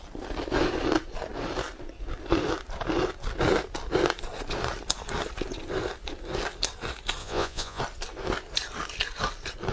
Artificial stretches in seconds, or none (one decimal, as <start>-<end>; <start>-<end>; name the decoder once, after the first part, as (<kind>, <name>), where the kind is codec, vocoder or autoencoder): 7.2-7.8 (vocoder, Vocos)